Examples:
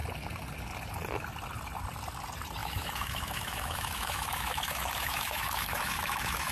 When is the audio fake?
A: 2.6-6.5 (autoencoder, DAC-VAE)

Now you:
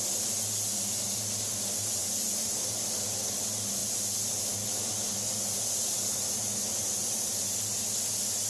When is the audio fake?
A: none

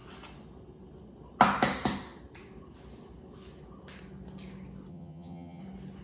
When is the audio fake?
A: 4.9-5.6 (vocoder, HiFi-GAN)

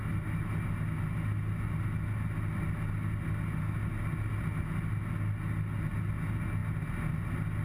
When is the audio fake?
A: none

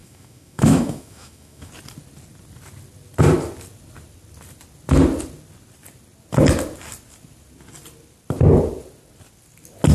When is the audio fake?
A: 0.0-1.7 (autoencoder, DAC-VAE)